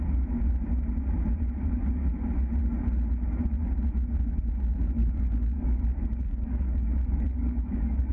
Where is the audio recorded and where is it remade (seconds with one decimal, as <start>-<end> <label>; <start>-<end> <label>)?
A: 0.0-5.0 recorded; 5.0-8.1 remade